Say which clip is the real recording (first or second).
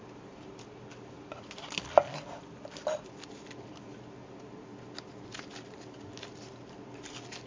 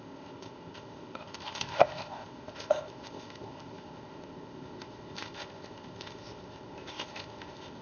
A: first